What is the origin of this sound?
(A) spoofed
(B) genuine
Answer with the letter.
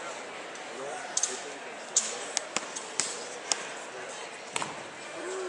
B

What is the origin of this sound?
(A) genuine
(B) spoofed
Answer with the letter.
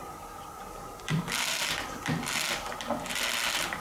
A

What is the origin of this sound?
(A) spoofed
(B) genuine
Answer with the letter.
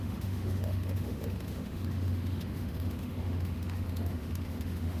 A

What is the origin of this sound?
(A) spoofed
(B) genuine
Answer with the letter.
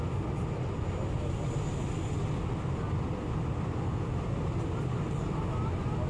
B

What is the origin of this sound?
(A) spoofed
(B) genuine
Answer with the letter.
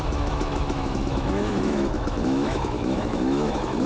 A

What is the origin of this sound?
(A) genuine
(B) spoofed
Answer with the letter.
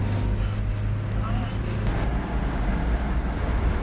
A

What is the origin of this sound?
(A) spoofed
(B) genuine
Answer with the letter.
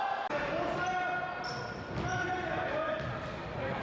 B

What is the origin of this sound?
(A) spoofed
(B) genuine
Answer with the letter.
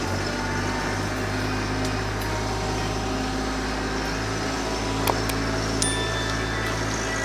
B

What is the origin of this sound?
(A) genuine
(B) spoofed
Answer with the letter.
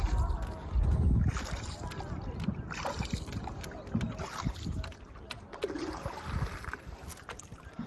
A